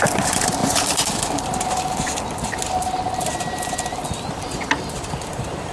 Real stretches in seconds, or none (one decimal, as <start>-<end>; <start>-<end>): 0.0-5.7